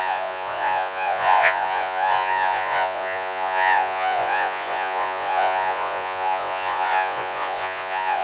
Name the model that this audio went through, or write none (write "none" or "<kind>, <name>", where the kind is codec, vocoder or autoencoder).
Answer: vocoder, Vocos